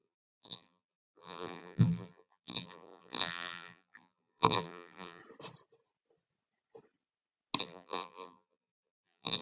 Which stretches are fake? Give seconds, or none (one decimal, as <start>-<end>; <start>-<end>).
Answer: 0.0-5.2; 7.6-9.4